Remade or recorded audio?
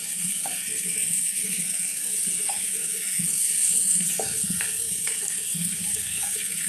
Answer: remade